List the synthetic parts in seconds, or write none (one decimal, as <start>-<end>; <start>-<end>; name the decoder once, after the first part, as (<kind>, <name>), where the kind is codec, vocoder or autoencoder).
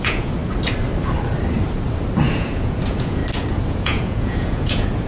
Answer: 0.0-0.4 (vocoder, Vocos); 2.2-3.2; 3.7-5.1